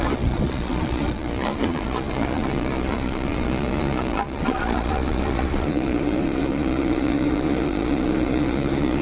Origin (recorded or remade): remade